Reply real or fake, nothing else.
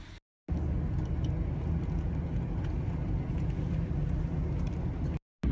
real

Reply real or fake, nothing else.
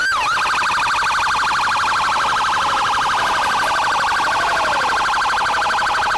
real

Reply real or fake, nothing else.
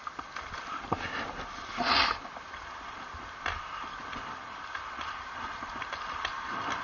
real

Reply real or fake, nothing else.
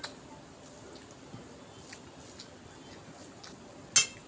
real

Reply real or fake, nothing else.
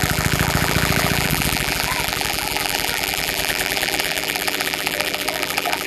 fake